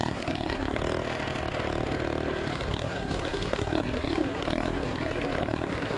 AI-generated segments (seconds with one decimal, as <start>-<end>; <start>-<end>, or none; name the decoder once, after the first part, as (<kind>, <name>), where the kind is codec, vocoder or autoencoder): 0.0-0.8 (codec, SNAC); 2.5-6.0